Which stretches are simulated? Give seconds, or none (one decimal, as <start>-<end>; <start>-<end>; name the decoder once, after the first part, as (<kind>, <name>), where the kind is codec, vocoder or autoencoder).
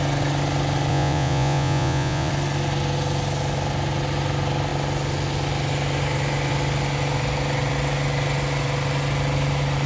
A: 0.9-2.3 (vocoder, Vocos)